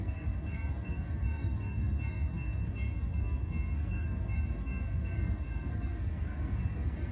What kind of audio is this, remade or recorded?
remade